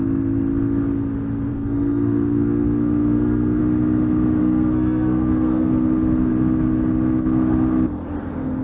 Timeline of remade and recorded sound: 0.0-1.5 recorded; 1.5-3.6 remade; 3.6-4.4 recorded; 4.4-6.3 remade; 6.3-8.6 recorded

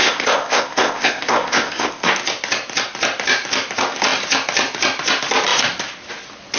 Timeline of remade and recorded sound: 0.0-2.1 remade; 2.1-6.6 recorded

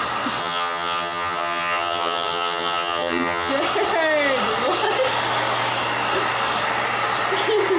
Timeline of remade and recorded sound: 0.0-0.4 recorded; 0.4-3.5 remade; 3.5-7.8 recorded

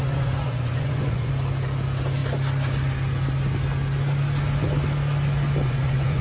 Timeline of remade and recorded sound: 0.0-1.3 remade; 1.3-5.6 recorded; 5.6-6.2 remade

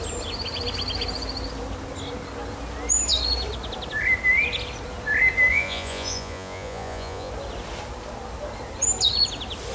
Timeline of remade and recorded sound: 0.0-5.5 recorded; 5.5-7.3 remade; 7.3-9.7 recorded

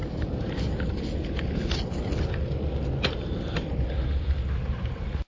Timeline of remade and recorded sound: 0.0-5.3 recorded